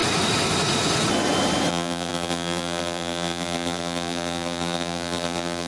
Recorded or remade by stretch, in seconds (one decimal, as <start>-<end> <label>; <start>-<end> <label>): 0.0-1.7 recorded; 1.7-5.7 remade